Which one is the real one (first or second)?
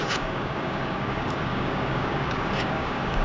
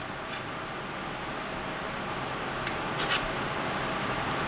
second